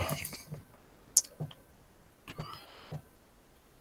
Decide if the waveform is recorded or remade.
recorded